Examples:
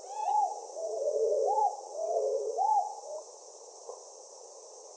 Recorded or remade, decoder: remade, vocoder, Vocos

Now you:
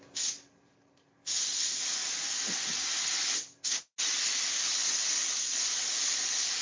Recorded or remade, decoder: recorded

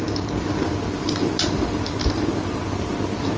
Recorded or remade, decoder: recorded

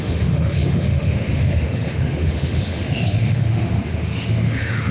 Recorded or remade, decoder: remade, autoencoder, DAC-VAE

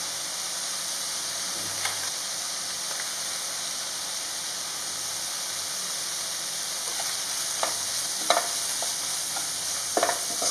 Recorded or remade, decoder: recorded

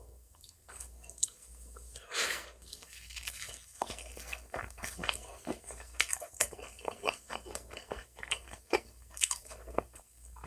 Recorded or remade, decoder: remade, codec, SNAC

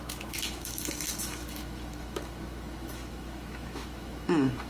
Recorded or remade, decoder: remade, autoencoder, DAC-VAE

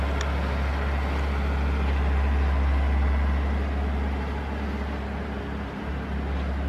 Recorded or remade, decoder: recorded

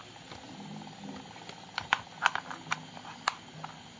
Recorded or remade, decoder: recorded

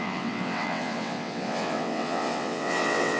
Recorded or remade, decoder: remade, vocoder, WaveNeXt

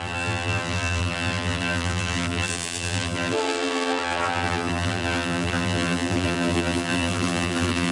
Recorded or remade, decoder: remade, vocoder, BigVGAN v2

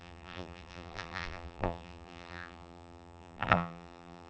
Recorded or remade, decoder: remade, vocoder, BigVGAN v2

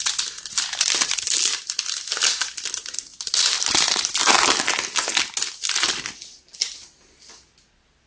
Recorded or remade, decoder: recorded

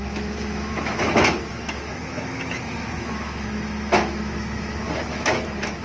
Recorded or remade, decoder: remade, autoencoder, DAC-VAE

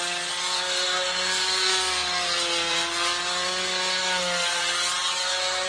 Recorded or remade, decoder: recorded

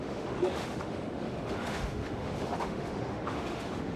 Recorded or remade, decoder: remade, autoencoder, DAC-VAE